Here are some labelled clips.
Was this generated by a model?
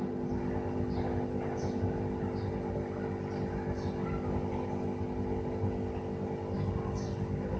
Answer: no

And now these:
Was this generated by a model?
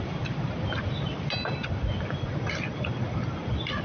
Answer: no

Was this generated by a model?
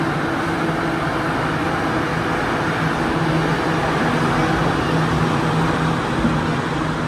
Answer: no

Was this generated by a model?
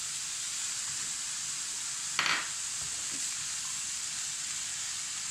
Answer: no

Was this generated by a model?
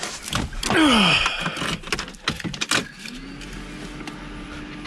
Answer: no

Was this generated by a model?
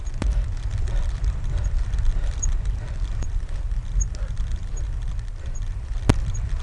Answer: yes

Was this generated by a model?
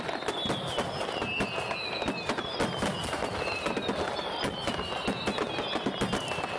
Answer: no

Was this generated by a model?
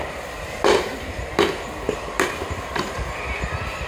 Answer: no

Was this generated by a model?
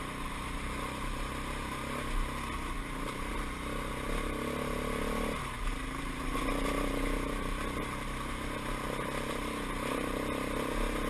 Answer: no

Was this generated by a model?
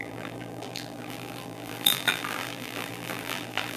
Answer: yes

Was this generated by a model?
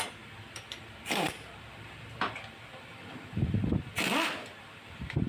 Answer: yes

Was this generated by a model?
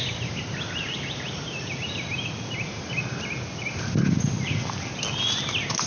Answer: no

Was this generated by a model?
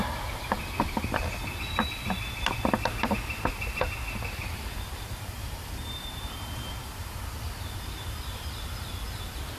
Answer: yes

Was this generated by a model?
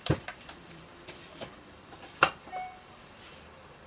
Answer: yes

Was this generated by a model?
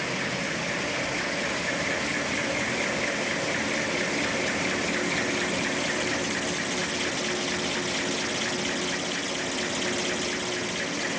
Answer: no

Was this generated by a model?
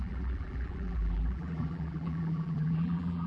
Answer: yes